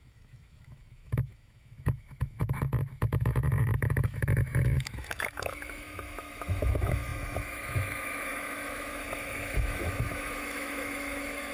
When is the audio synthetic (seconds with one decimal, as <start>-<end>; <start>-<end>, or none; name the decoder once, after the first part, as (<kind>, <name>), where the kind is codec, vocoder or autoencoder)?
0.0-11.5 (autoencoder, DAC-VAE)

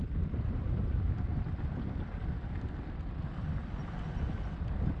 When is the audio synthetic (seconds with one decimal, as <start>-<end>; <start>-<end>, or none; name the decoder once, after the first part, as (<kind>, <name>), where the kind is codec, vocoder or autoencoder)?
none

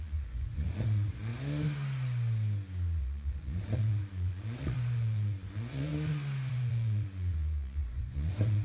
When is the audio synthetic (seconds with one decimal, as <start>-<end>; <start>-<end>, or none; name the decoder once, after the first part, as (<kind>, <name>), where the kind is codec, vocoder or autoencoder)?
0.0-1.3 (vocoder, Vocos); 3.0-5.9; 6.5-8.6

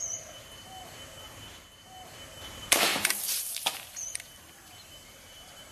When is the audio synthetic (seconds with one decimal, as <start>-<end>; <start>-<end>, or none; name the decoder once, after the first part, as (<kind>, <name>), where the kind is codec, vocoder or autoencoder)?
0.0-5.7 (vocoder, BigVGAN v2)

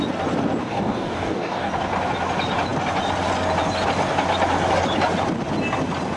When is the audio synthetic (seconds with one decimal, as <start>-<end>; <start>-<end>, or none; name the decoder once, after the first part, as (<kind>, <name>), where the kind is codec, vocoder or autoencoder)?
0.6-1.7 (codec, DAC)

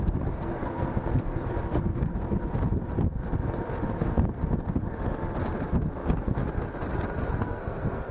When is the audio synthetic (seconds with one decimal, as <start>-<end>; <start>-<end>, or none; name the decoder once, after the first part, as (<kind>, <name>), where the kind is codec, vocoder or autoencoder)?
0.0-2.1 (codec, SNAC); 3.9-4.4; 5.9-6.4; 7.3-8.1